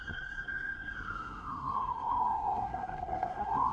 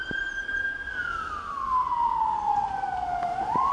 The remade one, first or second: first